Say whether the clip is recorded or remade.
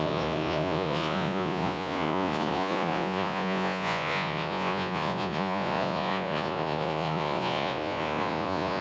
remade